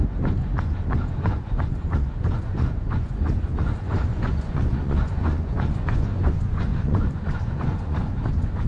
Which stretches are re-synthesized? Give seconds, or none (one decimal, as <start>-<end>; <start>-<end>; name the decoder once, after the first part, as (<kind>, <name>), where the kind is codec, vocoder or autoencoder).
0.0-8.7 (vocoder, Vocos)